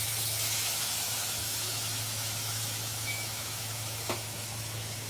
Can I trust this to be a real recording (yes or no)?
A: no